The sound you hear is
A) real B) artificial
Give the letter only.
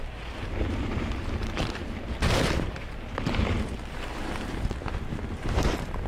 B